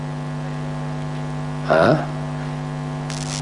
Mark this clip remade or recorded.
recorded